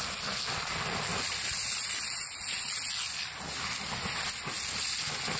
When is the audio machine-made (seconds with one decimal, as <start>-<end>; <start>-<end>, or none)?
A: none